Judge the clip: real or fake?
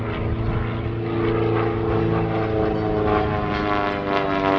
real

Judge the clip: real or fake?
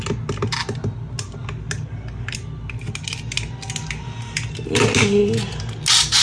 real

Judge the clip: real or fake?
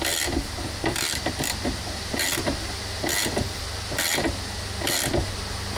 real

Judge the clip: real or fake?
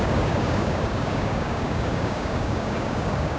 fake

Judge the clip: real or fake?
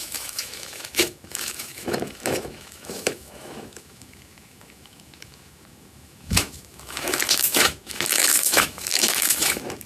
fake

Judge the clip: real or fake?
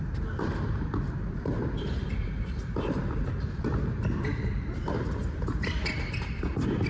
real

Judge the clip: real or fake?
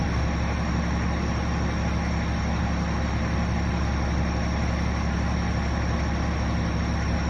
real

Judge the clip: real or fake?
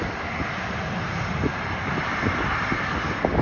real